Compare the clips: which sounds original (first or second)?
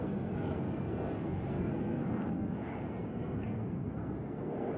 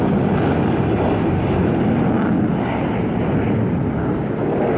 second